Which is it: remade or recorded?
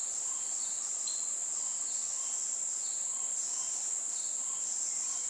recorded